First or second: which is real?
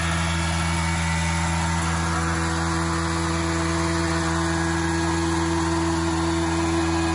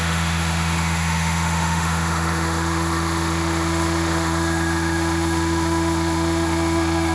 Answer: first